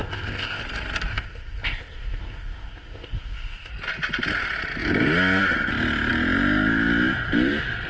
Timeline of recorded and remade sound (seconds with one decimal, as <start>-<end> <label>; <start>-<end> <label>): 0.0-0.6 remade; 0.6-1.1 recorded; 1.1-3.7 remade; 3.7-7.9 recorded